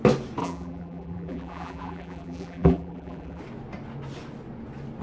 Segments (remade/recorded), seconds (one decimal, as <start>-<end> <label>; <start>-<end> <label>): 0.0-0.4 recorded; 0.4-3.4 remade; 3.4-5.0 recorded

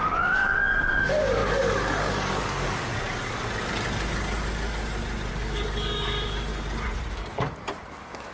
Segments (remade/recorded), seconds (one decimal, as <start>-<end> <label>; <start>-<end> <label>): 0.0-2.9 remade; 2.9-5.3 recorded; 5.3-6.5 remade; 6.5-7.1 recorded; 7.1-8.3 remade

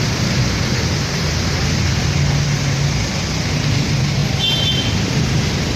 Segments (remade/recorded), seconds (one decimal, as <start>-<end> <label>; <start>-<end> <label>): 0.0-5.8 recorded

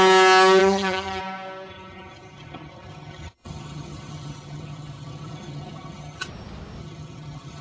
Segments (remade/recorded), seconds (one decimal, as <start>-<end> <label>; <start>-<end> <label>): 0.0-0.6 recorded; 0.6-1.2 remade; 1.2-1.7 recorded; 1.7-6.3 remade; 6.3-6.8 recorded; 6.8-7.6 remade

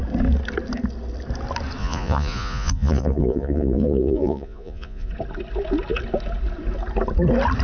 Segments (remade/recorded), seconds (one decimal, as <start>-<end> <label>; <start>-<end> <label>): 0.0-1.8 recorded; 1.8-5.1 remade; 5.1-7.6 recorded